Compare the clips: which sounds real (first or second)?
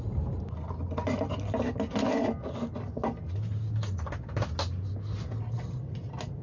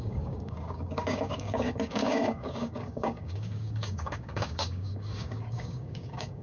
first